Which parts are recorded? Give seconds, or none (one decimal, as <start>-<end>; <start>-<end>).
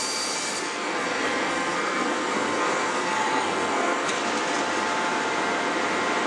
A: 0.0-0.6; 4.2-6.3